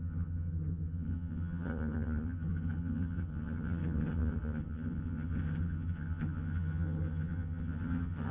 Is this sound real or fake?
fake